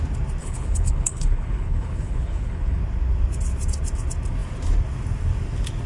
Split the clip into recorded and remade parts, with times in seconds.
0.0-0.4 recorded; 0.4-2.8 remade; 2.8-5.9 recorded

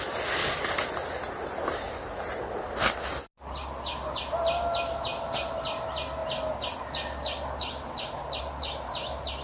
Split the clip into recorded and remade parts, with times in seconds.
0.0-9.4 recorded

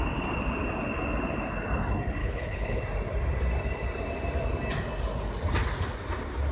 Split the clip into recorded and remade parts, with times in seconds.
0.0-2.2 recorded; 2.2-2.8 remade; 2.8-6.5 recorded

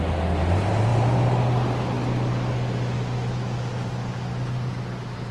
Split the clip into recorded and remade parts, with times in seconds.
0.0-5.3 recorded

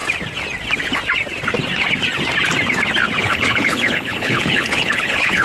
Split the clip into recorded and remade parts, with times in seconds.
0.0-3.2 recorded; 3.2-5.4 remade

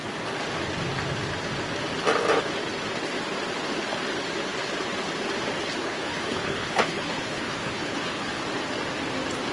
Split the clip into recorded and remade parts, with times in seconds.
0.0-5.8 recorded; 5.8-8.4 remade; 8.4-9.5 recorded

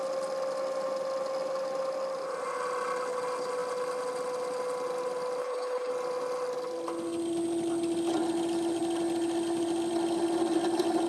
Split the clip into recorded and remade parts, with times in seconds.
0.0-5.4 recorded; 5.4-5.9 remade; 5.9-11.1 recorded

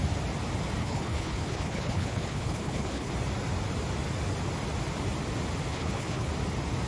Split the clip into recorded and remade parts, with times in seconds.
0.0-0.8 recorded; 0.8-3.1 remade; 3.1-5.7 recorded; 5.7-6.3 remade; 6.3-6.9 recorded